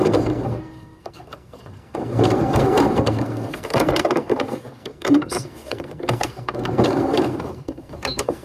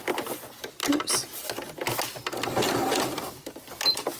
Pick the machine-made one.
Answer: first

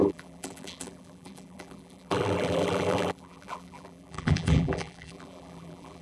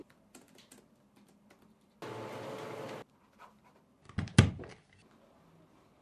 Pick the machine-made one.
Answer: first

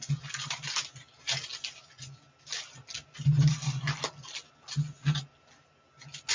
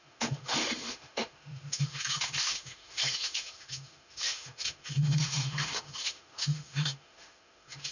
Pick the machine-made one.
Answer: second